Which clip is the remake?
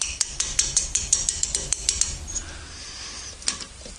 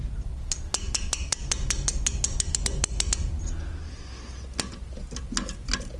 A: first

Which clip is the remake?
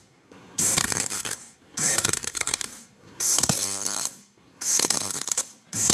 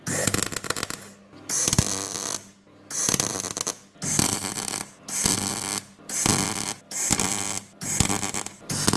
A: first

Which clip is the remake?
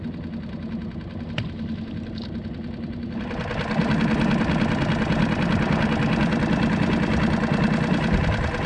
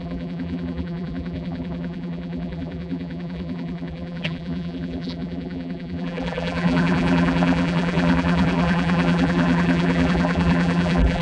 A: second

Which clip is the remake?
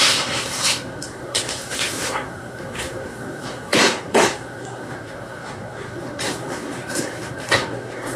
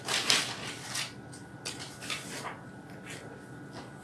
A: first